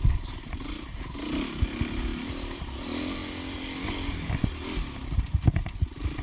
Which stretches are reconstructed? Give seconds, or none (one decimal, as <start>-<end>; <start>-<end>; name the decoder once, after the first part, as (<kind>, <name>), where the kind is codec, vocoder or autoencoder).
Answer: 2.1-2.6 (vocoder, BigVGAN v2)